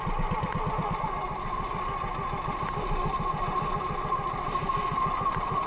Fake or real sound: real